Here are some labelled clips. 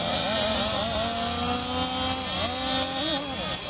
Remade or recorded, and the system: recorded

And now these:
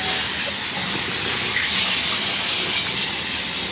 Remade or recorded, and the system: recorded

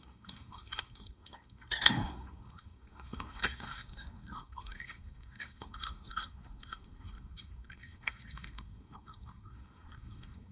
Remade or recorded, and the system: remade, codec, SNAC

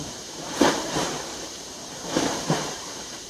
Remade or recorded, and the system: remade, vocoder, BigVGAN v2